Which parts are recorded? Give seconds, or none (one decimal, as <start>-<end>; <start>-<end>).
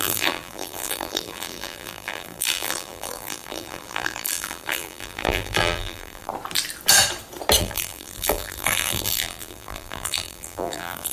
6.3-7.6